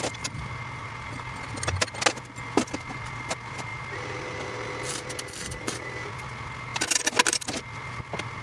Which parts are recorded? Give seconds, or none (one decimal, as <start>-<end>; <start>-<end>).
0.0-8.4